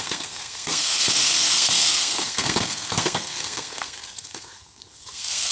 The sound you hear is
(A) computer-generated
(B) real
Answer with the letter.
A